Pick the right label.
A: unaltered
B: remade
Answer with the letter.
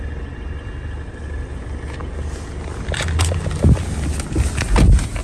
A